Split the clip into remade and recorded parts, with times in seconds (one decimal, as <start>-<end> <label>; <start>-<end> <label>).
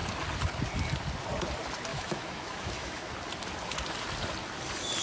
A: 0.0-1.9 recorded; 1.9-3.1 remade; 3.1-5.0 recorded